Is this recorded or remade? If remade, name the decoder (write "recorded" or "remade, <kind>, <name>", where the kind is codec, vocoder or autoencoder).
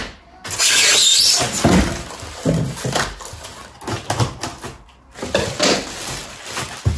recorded